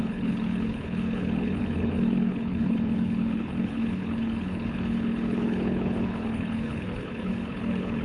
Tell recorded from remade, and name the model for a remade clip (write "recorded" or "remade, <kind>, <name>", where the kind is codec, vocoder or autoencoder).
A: remade, codec, HILCodec